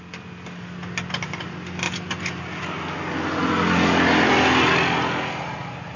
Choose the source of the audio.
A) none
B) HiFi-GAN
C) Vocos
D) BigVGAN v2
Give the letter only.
A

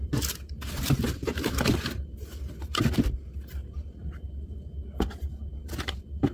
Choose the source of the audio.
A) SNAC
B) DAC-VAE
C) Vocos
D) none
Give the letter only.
D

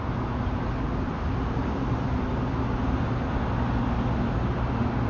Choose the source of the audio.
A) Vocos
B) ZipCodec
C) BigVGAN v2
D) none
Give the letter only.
D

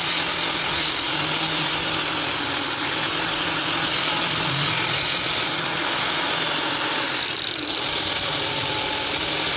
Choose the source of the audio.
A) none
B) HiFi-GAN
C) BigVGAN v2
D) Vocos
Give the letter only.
A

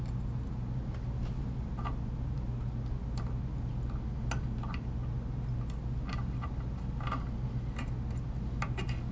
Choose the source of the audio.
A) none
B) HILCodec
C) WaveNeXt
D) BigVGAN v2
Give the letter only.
A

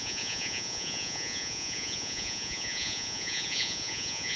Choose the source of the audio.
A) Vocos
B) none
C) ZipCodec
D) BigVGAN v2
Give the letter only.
A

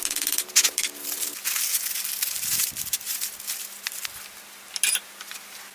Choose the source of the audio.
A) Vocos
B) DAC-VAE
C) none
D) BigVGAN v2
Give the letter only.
C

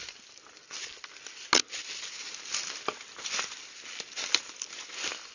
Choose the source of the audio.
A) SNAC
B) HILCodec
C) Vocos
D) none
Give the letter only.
D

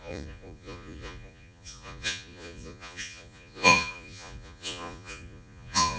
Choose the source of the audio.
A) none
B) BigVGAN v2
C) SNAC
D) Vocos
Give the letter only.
D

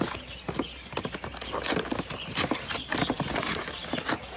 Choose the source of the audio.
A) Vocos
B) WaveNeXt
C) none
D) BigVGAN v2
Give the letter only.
C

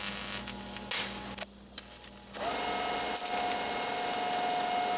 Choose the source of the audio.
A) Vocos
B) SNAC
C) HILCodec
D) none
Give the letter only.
D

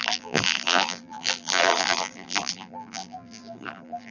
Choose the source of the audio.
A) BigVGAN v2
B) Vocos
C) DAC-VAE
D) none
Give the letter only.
A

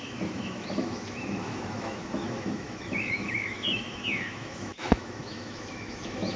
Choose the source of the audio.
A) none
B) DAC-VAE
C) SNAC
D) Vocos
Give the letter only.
B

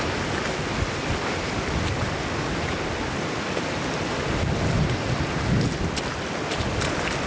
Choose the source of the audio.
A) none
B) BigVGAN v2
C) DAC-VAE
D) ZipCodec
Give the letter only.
A